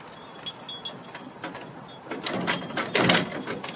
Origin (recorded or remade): recorded